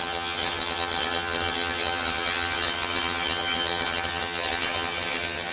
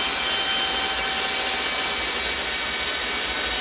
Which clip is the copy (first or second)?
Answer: first